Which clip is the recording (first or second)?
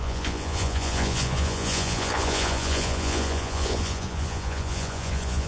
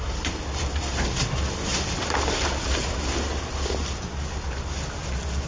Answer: second